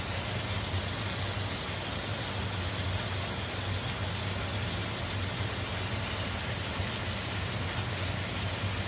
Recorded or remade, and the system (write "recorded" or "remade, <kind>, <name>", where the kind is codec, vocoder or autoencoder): recorded